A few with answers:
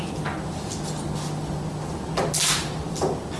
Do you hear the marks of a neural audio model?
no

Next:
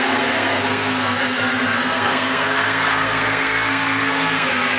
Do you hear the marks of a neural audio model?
yes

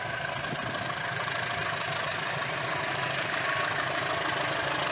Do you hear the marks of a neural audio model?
no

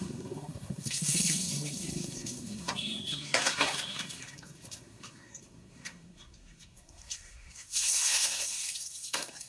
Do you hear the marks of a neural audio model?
yes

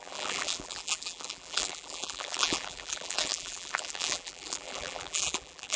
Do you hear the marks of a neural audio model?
yes